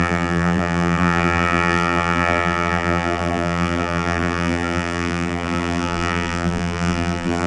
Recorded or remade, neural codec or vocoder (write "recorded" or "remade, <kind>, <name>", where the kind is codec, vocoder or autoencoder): remade, vocoder, BigVGAN v2